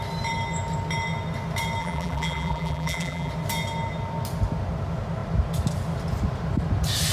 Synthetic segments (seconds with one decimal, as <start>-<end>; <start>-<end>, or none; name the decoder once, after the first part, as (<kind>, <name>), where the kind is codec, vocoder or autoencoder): 1.8-3.3 (vocoder, BigVGAN v2)